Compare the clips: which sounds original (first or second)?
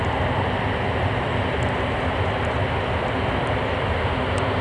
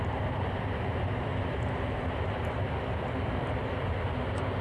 first